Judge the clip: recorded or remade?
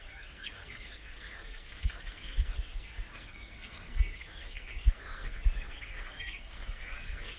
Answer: remade